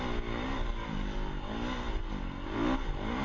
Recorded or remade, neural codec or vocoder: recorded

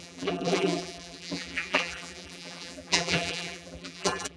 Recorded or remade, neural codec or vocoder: remade, vocoder, BigVGAN v2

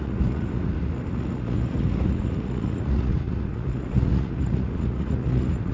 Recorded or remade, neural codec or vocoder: remade, vocoder, Vocos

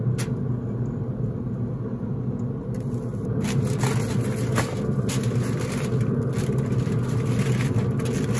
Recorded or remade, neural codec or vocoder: recorded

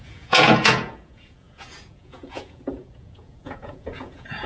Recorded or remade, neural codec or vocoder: remade, vocoder, Vocos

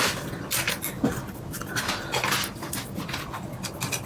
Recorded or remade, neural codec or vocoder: recorded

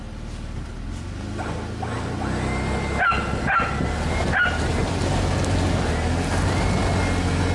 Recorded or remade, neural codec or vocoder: recorded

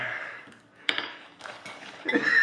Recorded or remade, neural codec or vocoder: remade, codec, DAC